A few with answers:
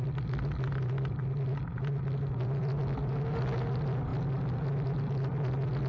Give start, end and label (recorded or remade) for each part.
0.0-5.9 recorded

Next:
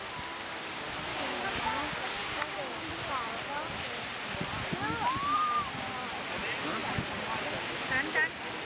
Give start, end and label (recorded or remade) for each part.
0.0-1.1 recorded; 1.1-3.1 remade; 3.1-8.6 recorded

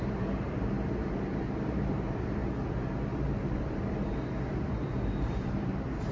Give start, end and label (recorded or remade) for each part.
0.0-2.4 remade; 2.4-5.2 recorded; 5.2-6.1 remade

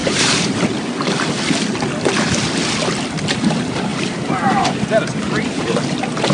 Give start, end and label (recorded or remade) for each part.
0.0-0.6 remade; 0.6-3.9 recorded; 3.9-4.7 remade; 4.7-6.3 recorded

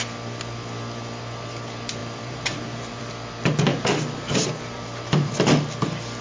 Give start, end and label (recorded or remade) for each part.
0.0-2.0 recorded; 2.0-3.0 remade; 3.0-3.7 recorded; 3.7-5.3 remade; 5.3-6.2 recorded

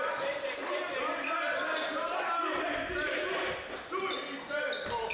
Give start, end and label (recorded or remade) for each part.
0.0-5.1 recorded

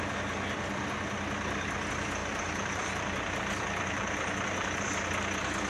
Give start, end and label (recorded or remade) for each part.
0.0-2.2 recorded; 2.2-4.9 remade; 4.9-5.7 recorded